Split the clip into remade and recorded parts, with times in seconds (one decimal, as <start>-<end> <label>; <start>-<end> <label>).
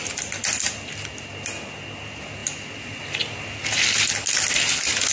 0.0-5.1 recorded